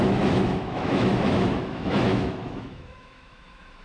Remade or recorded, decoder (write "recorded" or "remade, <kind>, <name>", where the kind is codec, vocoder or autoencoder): remade, autoencoder, DAC-VAE